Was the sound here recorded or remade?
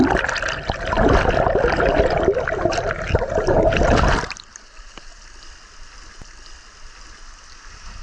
recorded